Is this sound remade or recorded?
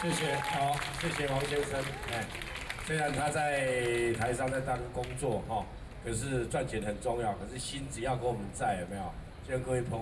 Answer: recorded